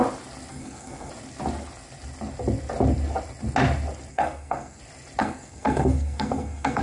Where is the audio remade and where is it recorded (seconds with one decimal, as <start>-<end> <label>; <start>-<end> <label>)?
0.0-0.5 recorded; 0.5-1.1 remade; 1.1-4.1 recorded; 4.1-4.8 remade; 4.8-5.2 recorded; 5.2-6.8 remade